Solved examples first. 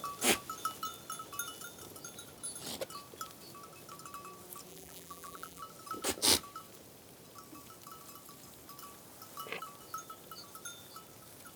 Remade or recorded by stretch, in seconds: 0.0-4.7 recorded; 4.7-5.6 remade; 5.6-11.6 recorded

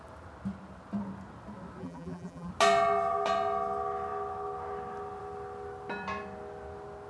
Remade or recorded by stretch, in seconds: 0.0-1.8 recorded; 1.8-2.5 remade; 2.5-7.1 recorded

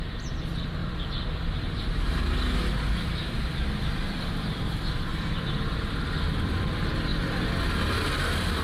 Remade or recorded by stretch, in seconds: 0.0-0.8 remade; 0.8-4.5 recorded; 4.5-7.1 remade; 7.1-8.2 recorded; 8.2-8.6 remade

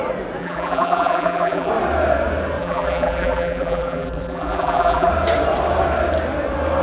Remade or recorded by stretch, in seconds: 0.0-0.4 recorded; 0.4-1.7 remade; 1.7-2.6 recorded; 2.6-5.1 remade; 5.1-6.8 recorded

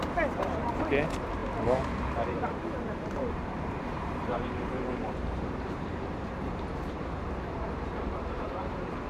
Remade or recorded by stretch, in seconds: 0.0-9.1 remade

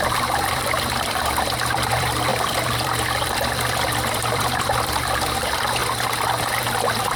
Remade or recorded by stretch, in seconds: 0.0-5.8 remade; 5.8-6.6 recorded; 6.6-7.2 remade